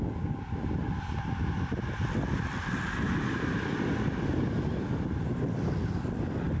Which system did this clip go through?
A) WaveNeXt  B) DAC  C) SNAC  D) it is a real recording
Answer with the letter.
D